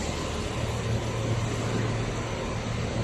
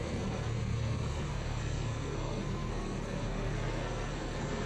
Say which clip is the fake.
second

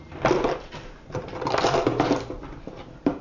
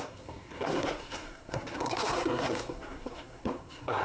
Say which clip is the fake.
second